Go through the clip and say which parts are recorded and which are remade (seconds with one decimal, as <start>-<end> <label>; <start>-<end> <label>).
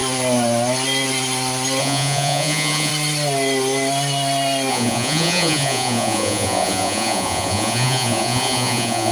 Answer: 0.0-1.8 recorded; 1.8-2.9 remade; 2.9-4.7 recorded; 4.7-9.1 remade